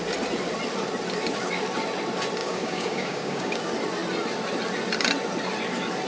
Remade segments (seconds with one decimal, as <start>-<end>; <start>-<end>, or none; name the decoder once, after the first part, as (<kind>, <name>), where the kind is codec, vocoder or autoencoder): 2.4-3.6 (codec, DAC)